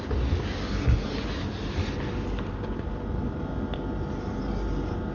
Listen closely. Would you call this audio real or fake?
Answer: real